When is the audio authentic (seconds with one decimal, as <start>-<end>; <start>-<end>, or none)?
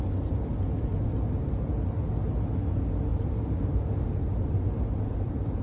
0.0-3.1